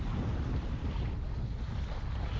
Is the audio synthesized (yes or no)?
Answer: no